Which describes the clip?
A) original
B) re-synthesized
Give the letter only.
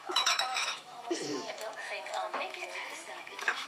B